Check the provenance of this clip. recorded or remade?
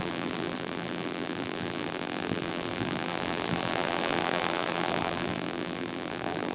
remade